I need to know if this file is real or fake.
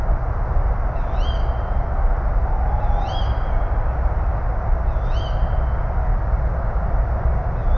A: real